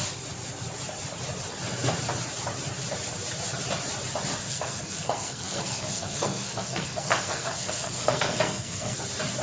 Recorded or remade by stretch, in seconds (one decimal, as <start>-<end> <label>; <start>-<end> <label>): 0.0-4.4 recorded; 4.4-9.0 remade; 9.0-9.4 recorded